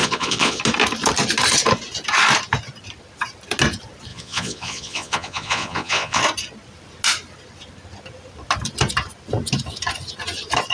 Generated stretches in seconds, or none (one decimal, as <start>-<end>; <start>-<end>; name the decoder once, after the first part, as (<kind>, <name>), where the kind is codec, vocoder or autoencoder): 0.0-0.6 (vocoder, Vocos); 4.1-6.2